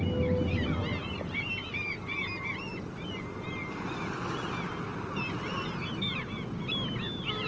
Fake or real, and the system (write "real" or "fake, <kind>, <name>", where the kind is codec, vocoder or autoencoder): real